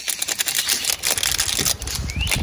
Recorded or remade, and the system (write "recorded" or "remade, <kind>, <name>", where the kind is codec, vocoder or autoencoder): recorded